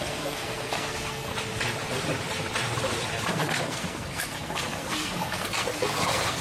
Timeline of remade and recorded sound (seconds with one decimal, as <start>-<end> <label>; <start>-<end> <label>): 0.0-1.3 remade; 1.3-3.3 recorded; 3.3-6.4 remade